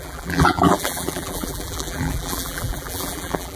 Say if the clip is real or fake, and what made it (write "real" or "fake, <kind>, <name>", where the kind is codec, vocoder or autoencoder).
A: fake, vocoder, BigVGAN v2